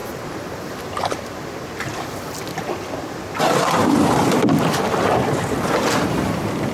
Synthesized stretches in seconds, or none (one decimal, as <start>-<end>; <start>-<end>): 0.0-1.2